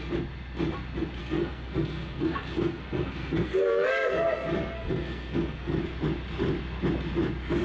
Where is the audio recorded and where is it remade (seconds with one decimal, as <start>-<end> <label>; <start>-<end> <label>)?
0.0-1.2 recorded; 1.2-5.8 remade; 5.8-7.6 recorded